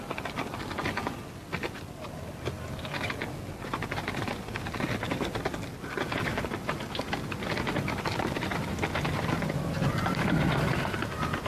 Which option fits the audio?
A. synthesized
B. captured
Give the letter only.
B